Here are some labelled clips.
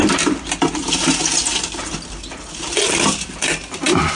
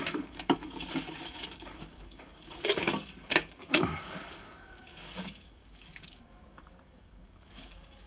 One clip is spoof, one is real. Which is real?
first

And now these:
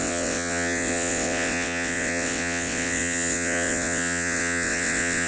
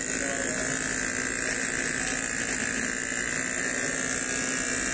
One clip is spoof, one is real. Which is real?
second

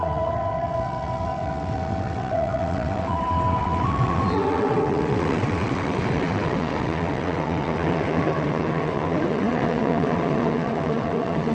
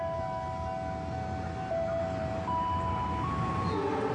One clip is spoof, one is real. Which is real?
second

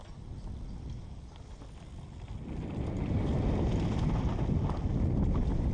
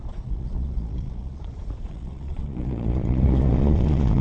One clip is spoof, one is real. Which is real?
first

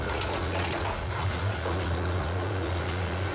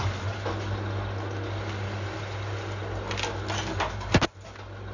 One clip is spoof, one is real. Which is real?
second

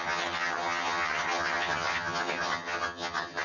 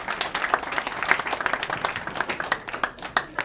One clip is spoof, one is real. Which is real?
second